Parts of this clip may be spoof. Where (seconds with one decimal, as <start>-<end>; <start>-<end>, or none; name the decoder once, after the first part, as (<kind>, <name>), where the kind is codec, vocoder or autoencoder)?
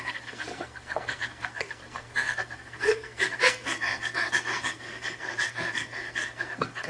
0.0-6.9 (codec, SNAC)